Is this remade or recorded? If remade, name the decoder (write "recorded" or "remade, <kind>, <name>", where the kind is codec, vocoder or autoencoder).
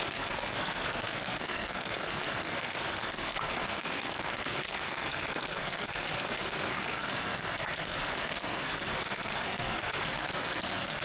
remade, codec, SNAC